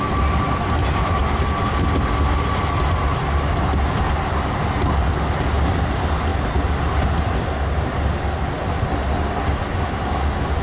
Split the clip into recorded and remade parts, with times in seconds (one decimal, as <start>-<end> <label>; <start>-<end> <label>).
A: 0.0-10.6 recorded